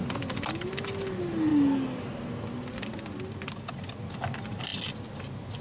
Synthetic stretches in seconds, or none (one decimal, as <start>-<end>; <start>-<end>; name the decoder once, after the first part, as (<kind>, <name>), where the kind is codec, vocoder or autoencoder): none